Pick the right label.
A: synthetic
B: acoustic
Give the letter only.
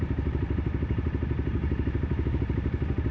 B